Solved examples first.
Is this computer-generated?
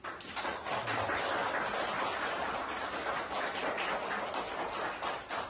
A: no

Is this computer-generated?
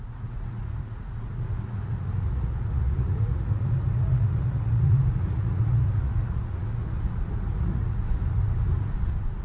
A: yes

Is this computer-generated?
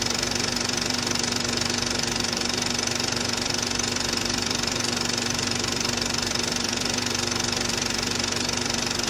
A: yes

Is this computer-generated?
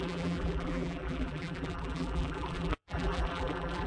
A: yes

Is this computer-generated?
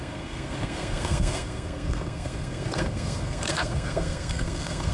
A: yes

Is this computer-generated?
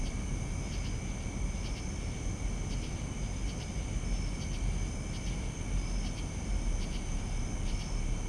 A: no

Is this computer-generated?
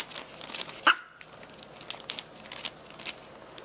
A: no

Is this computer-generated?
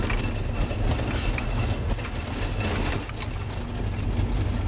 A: no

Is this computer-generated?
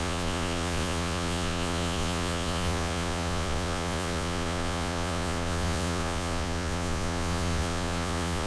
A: yes